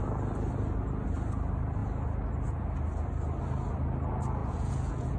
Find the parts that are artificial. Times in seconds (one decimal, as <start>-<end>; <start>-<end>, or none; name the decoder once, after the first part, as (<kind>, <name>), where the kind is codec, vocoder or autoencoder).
4.4-5.2 (vocoder, Vocos)